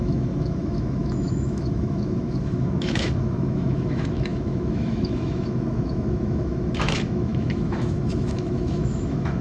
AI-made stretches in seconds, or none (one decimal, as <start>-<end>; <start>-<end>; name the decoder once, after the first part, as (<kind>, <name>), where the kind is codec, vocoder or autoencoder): 0.0-9.4 (autoencoder, DAC-VAE)